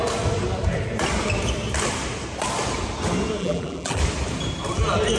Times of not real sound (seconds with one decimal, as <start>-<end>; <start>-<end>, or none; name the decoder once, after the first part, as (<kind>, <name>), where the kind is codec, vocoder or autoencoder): 3.4-4.0 (vocoder, BigVGAN v2)